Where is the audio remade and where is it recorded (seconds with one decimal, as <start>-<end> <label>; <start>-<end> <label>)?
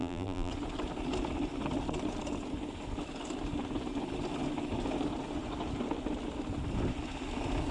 0.0-0.5 remade; 0.5-7.7 recorded